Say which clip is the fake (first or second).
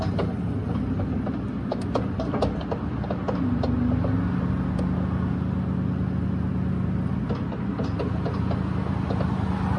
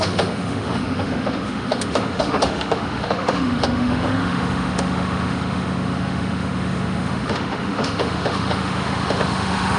second